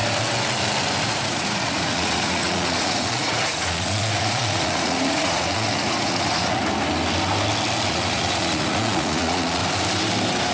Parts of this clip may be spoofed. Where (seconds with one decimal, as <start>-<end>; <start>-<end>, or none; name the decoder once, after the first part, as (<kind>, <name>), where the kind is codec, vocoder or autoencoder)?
1.0-6.6 (vocoder, Vocos); 7.9-9.6